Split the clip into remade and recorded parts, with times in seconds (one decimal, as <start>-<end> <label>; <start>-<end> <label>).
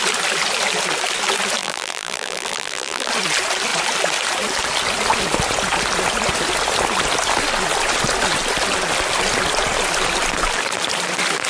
0.0-1.6 recorded; 1.6-3.1 remade; 3.1-11.5 recorded